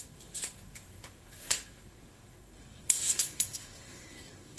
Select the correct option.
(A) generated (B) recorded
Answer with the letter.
A